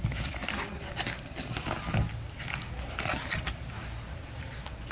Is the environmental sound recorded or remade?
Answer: recorded